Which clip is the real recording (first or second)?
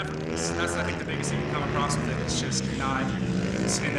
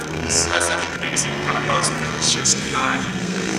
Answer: first